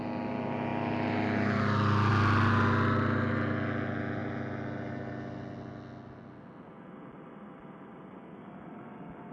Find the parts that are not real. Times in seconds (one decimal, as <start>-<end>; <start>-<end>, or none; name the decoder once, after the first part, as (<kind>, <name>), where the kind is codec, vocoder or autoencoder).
none